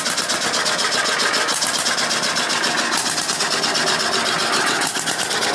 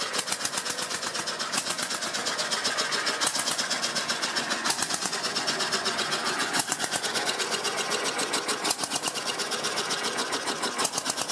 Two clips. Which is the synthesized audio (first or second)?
second